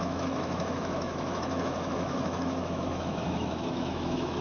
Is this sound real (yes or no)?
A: no